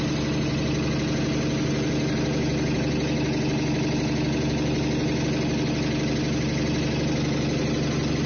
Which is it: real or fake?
real